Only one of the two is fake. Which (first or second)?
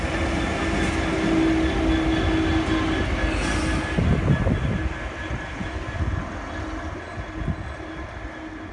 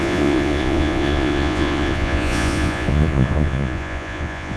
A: second